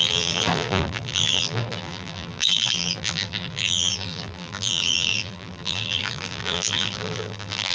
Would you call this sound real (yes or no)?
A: no